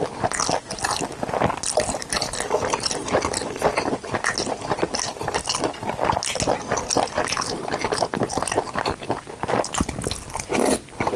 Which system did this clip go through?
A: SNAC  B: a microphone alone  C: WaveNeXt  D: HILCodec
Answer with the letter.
B